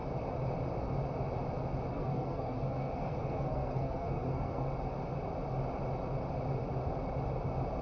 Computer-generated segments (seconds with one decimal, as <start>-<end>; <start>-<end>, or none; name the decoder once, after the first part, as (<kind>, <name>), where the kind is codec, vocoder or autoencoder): 1.9-4.7 (codec, SNAC)